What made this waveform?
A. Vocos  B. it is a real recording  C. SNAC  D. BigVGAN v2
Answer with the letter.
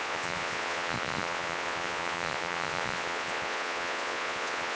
A